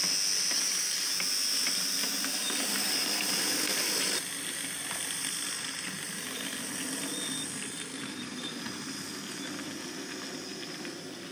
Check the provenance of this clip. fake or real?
real